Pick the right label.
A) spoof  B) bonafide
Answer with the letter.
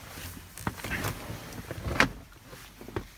B